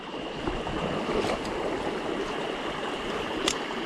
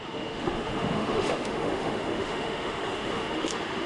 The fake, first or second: second